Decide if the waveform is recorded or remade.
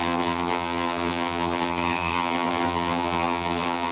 remade